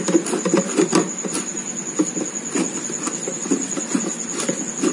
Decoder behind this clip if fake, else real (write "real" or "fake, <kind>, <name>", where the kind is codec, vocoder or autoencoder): real